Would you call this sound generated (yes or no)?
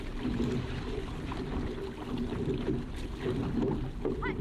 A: no